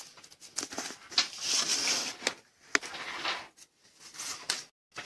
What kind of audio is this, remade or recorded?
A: recorded